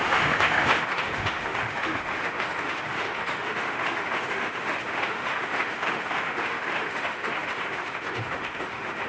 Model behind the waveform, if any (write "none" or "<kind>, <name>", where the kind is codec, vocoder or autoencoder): autoencoder, DAC-VAE